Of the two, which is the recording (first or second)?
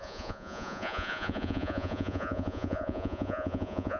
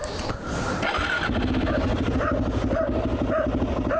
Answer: second